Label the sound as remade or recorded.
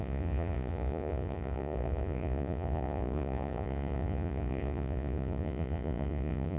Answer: remade